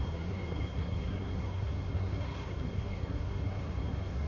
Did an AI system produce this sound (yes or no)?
yes